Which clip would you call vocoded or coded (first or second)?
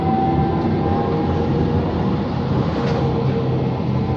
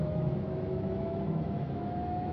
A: second